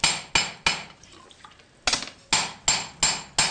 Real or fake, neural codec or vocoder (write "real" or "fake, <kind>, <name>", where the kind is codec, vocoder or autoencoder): real